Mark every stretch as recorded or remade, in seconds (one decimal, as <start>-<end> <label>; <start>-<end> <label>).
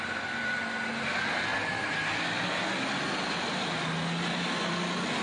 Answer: 0.0-1.5 remade; 1.5-4.6 recorded; 4.6-5.2 remade